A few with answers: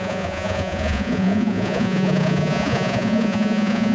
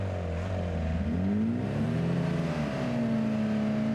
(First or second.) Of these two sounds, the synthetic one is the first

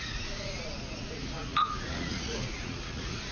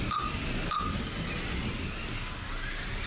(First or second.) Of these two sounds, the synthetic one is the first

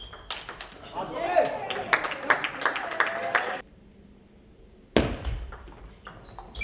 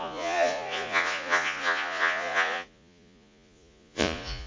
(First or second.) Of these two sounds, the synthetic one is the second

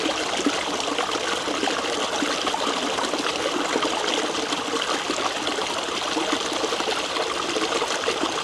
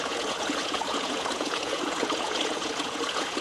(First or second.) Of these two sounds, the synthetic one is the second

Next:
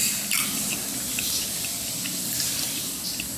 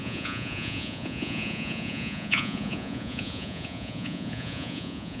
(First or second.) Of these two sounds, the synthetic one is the second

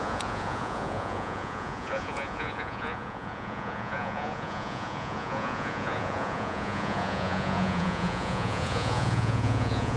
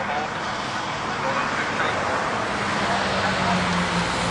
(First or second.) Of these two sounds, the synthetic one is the first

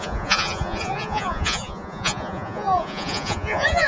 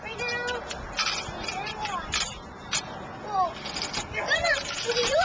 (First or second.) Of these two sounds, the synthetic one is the first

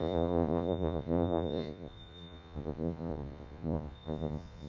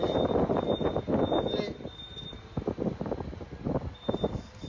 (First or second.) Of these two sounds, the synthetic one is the first